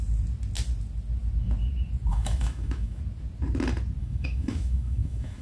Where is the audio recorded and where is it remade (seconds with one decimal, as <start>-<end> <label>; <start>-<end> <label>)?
0.0-2.1 recorded; 2.1-3.0 remade; 3.0-4.0 recorded; 4.0-5.4 remade